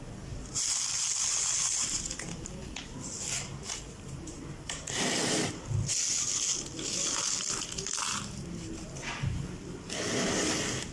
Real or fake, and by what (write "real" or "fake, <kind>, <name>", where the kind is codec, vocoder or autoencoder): real